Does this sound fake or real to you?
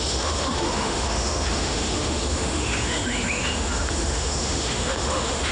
fake